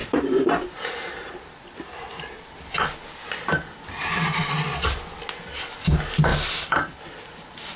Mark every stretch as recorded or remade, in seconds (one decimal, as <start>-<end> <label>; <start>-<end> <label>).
0.0-2.4 remade; 2.4-6.3 recorded; 6.3-7.0 remade; 7.0-7.8 recorded